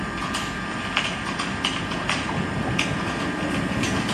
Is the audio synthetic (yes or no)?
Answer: no